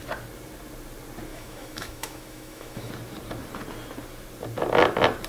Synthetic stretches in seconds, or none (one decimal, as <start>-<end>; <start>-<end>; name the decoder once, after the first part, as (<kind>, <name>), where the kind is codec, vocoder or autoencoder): 1.3-2.9 (autoencoder, DAC-VAE)